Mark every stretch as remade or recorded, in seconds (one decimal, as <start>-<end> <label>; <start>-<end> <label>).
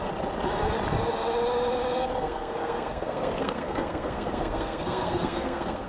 0.0-2.2 recorded; 2.2-5.9 remade